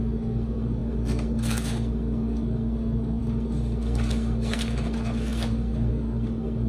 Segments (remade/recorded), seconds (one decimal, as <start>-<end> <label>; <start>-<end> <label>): 0.0-6.7 remade